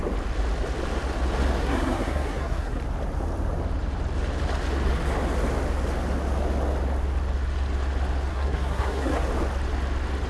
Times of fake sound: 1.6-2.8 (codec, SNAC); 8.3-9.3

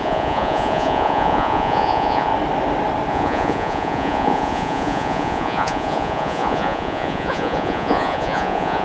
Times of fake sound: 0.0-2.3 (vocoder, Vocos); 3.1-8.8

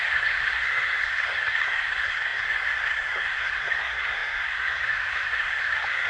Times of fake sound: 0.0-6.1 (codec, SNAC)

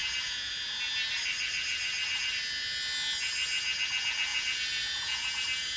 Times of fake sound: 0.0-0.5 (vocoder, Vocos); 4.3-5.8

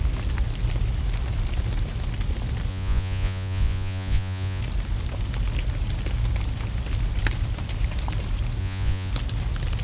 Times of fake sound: 2.7-4.6 (vocoder, Vocos); 8.6-9.1

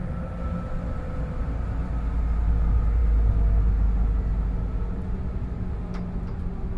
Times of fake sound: none

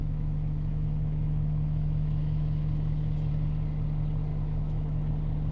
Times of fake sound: 0.0-3.3 (autoencoder, DAC-VAE); 4.3-5.1

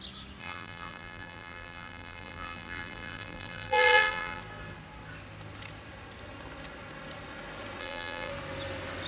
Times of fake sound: 0.4-4.4 (vocoder, BigVGAN v2); 7.8-8.3